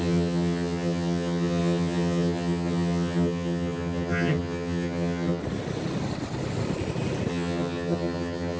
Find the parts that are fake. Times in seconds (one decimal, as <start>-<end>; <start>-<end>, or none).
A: 0.0-5.4; 7.3-8.6